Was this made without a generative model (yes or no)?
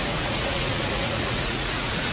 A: no